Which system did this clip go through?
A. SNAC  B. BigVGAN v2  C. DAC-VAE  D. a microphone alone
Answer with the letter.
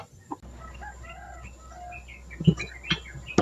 D